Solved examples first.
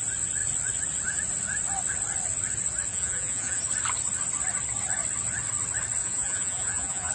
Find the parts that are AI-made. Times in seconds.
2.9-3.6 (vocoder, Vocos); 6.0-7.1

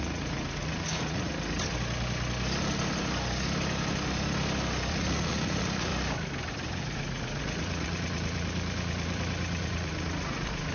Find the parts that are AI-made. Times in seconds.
0.0-1.3 (vocoder, Vocos); 4.9-5.9; 6.5-10.7

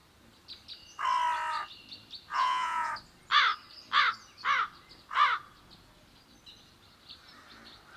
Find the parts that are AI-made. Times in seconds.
2.3-2.9 (vocoder, Vocos)

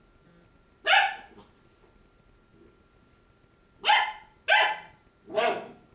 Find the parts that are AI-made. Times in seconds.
none

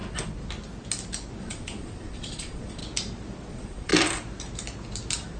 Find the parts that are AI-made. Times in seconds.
1.4-2.8 (vocoder, Vocos); 3.5-3.9